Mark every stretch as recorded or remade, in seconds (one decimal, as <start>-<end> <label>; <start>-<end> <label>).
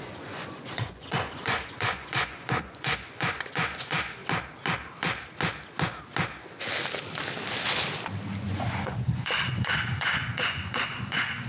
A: 0.0-4.2 remade; 4.2-8.4 recorded; 8.4-11.5 remade